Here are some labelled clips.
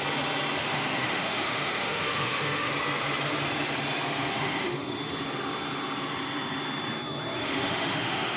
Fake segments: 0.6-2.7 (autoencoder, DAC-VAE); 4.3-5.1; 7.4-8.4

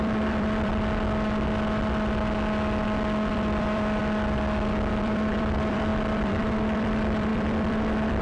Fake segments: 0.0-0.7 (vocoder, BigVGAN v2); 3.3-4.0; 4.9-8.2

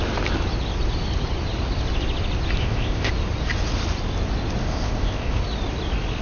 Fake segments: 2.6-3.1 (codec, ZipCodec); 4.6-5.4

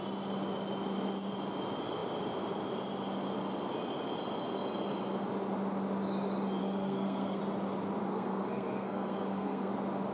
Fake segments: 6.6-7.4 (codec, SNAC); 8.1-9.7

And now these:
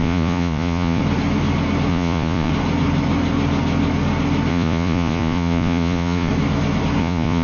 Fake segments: 0.0-1.0 (vocoder, Vocos); 1.9-2.5; 4.5-6.3; 7.0-7.4

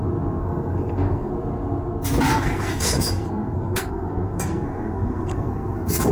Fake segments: 0.4-1.3 (codec, SNAC); 2.3-6.1